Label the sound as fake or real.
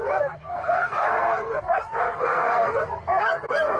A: fake